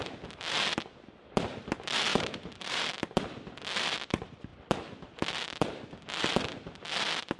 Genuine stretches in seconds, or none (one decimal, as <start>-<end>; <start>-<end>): 0.0-2.1; 2.8-7.4